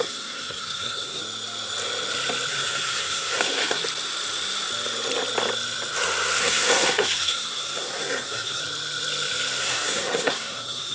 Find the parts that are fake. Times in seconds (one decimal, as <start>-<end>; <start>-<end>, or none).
0.0-1.2; 2.5-3.8; 6.4-8.6; 9.6-10.9